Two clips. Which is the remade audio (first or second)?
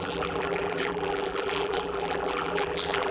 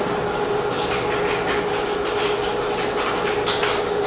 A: first